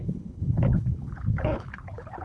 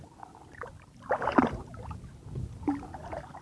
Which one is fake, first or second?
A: first